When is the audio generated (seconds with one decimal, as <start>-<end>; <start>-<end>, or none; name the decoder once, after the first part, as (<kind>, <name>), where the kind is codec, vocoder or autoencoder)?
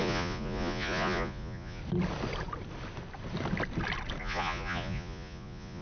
0.0-1.8 (vocoder, Vocos); 4.2-5.8